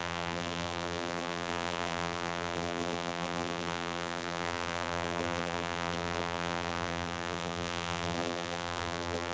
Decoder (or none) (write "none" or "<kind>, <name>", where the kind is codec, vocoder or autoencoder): vocoder, BigVGAN v2